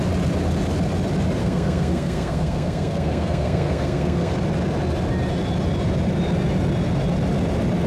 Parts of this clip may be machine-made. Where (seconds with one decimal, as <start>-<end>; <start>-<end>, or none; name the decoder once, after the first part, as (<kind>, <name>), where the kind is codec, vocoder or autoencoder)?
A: 1.4-4.3 (codec, SNAC)